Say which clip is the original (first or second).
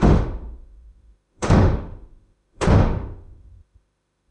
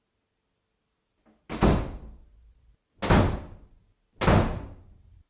second